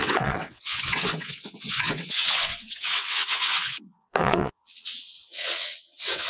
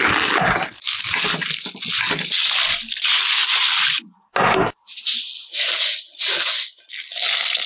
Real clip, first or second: second